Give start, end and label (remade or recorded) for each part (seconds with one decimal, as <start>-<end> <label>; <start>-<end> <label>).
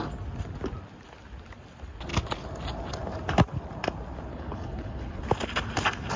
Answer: 0.0-4.3 recorded; 4.3-5.2 remade; 5.2-6.2 recorded